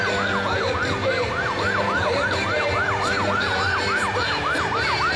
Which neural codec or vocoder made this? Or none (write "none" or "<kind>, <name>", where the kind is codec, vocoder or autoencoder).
none